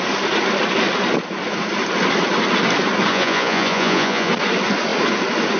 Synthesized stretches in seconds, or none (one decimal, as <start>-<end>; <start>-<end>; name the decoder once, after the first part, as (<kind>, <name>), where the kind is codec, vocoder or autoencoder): 3.1-4.3 (vocoder, Vocos)